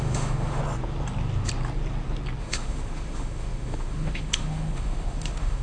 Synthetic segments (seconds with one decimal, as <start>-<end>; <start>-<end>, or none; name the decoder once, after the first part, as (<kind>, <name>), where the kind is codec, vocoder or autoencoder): 0.0-0.6 (autoencoder, DAC-VAE); 2.4-5.6